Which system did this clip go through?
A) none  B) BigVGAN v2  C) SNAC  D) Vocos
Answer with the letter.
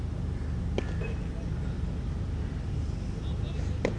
A